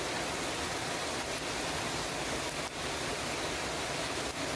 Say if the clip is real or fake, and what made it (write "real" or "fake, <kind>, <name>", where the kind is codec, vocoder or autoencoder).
real